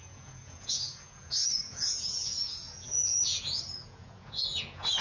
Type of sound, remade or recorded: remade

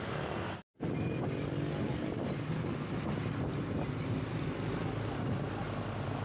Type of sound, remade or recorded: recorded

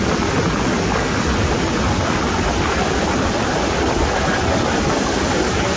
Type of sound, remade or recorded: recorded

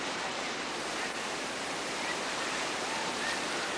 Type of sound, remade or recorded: remade